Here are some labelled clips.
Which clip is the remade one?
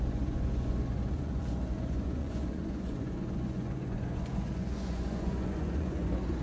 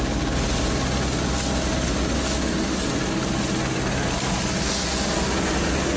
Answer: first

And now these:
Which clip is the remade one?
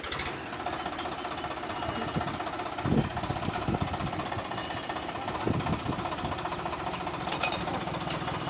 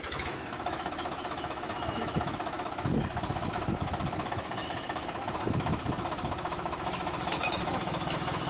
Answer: second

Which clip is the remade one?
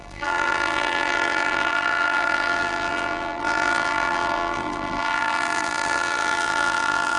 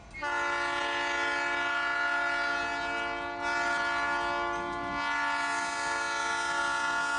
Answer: first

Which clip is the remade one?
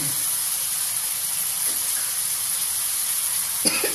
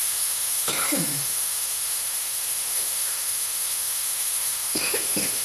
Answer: second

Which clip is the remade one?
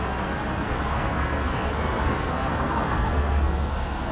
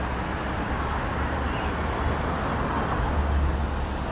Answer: first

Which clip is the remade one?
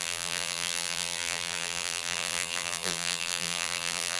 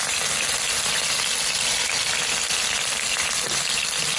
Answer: first